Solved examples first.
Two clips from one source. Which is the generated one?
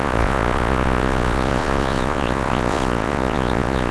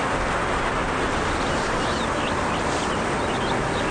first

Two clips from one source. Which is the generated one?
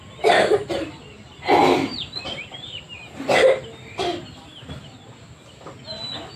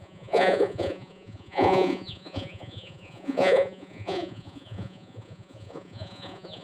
second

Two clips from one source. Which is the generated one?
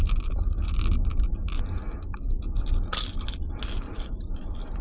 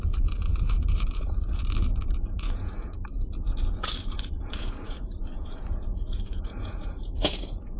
second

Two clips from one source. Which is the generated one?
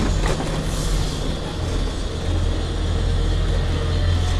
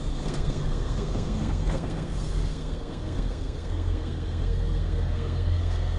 second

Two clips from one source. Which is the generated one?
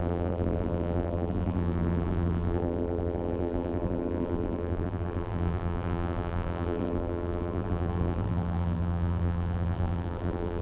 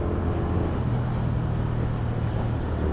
first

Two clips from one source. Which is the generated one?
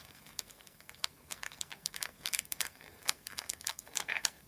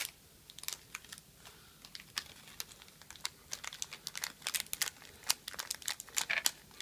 first